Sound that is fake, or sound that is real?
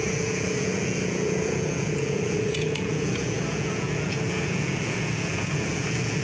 fake